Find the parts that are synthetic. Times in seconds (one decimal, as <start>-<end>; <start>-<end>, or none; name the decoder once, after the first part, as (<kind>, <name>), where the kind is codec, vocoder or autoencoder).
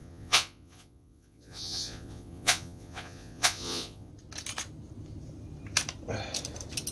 0.0-4.1 (vocoder, Vocos)